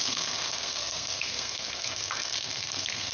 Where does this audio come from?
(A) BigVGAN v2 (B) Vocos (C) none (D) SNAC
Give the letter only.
D